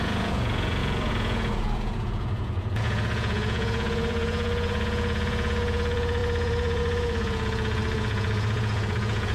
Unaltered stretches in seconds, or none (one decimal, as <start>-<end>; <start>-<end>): none